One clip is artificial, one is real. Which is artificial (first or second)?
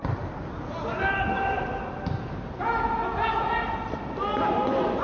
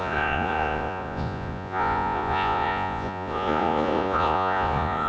second